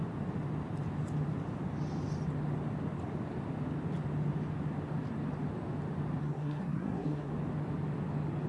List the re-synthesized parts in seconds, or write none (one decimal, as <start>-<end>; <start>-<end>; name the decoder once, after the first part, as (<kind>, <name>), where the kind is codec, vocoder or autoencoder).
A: 6.2-7.3 (codec, SNAC)